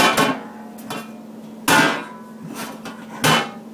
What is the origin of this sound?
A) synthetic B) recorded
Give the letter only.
B